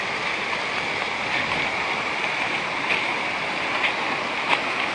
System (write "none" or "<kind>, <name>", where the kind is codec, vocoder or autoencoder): none